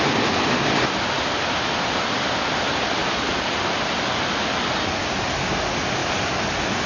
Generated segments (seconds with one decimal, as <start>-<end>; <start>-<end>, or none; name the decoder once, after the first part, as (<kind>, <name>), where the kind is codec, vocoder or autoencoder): 0.0-5.0 (vocoder, BigVGAN v2); 5.6-6.0